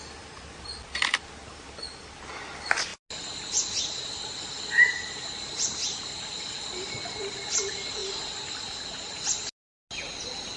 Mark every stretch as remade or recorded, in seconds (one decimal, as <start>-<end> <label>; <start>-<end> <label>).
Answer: 0.0-10.6 recorded

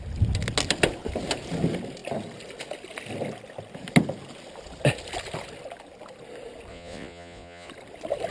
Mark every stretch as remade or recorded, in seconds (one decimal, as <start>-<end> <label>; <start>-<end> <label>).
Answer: 0.0-6.7 recorded; 6.7-7.7 remade; 7.7-8.3 recorded

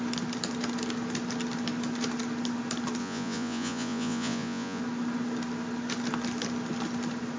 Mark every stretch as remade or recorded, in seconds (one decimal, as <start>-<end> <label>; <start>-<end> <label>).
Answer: 0.0-3.0 recorded; 3.0-4.8 remade; 4.8-7.4 recorded